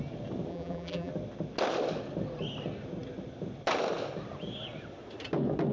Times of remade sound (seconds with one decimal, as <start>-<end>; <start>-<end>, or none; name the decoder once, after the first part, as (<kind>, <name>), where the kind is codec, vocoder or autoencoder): 0.5-1.1 (vocoder, BigVGAN v2)

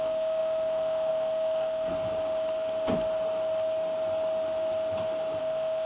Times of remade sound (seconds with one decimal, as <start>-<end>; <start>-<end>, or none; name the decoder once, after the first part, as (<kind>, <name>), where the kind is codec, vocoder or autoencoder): 0.0-1.9 (autoencoder, DAC-VAE); 5.4-5.9

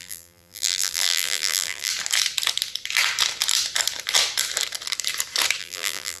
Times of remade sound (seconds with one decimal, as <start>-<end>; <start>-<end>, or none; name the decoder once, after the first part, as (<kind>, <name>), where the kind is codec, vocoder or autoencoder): 0.0-1.9 (vocoder, BigVGAN v2); 5.6-6.2